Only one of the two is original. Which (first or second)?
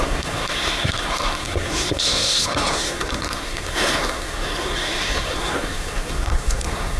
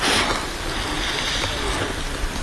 second